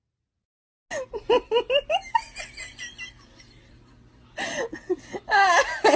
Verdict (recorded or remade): recorded